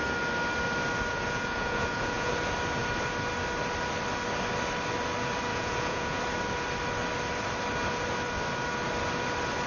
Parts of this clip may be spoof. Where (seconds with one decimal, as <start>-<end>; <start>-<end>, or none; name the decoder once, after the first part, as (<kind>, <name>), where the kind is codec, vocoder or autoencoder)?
1.1-2.3 (vocoder, Vocos); 5.5-6.2